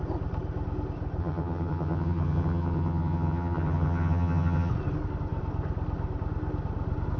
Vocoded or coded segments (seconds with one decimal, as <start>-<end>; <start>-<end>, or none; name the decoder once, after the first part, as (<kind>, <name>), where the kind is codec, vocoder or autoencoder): 1.2-4.7 (vocoder, HiFi-GAN)